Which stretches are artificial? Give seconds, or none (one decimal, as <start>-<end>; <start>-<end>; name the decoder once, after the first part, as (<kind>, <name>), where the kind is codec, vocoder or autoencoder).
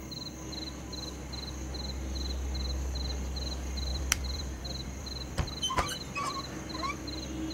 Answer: 3.9-7.0 (vocoder, BigVGAN v2)